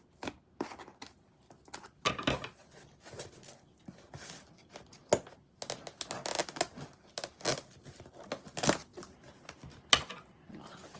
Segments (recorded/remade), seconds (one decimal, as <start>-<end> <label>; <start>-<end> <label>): 0.0-11.0 recorded